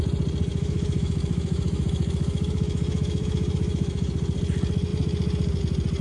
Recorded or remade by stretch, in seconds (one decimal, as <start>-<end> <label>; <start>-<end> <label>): 0.0-0.5 recorded; 0.5-4.1 remade; 4.1-6.0 recorded